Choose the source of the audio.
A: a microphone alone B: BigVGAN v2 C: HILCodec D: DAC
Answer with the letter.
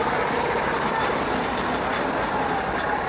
A